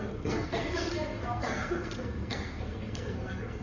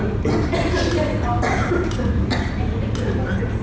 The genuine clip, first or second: second